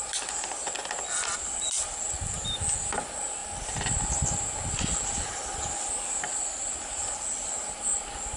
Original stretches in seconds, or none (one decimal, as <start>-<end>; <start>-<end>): 0.0-8.4

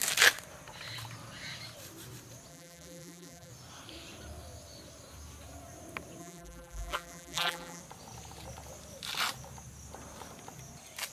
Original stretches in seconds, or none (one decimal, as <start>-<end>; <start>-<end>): 0.0-2.5; 3.5-6.2; 7.8-11.1

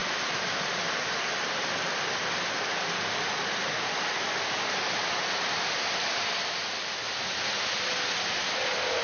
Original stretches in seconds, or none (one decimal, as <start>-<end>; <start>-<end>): 0.7-9.0

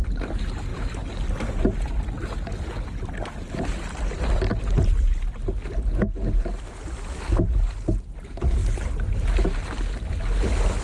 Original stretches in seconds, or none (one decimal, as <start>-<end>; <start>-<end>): 0.0-10.8